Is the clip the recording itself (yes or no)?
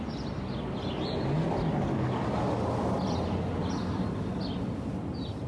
yes